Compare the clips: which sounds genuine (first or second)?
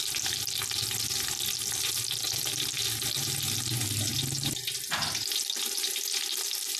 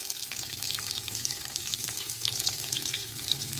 first